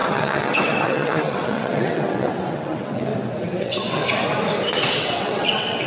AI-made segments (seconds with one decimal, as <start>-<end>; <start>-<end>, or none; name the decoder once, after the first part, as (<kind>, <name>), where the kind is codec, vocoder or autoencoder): 0.0-3.1 (vocoder, WaveNeXt); 3.6-4.0; 4.9-5.9